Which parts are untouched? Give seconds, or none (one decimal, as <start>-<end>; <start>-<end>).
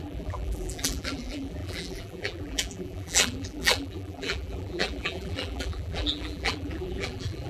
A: none